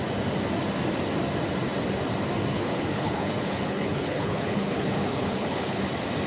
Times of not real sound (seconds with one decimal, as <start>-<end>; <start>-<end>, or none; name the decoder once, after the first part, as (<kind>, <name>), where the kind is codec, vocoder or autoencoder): 2.5-5.8 (codec, HILCodec)